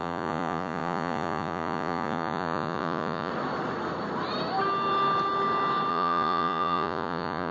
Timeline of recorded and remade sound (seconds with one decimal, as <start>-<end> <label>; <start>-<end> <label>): 0.0-3.3 remade; 3.3-5.9 recorded; 5.9-7.5 remade